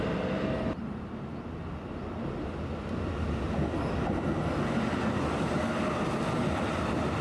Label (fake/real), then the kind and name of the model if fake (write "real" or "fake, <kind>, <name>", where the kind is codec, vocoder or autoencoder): real